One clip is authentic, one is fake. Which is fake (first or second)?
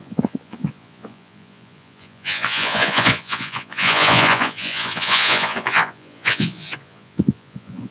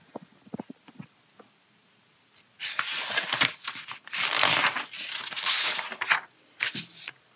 first